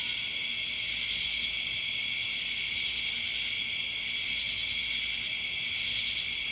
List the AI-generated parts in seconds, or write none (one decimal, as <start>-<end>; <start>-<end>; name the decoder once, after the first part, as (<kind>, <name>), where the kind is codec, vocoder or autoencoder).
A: none